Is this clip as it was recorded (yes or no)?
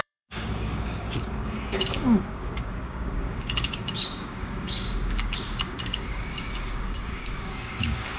no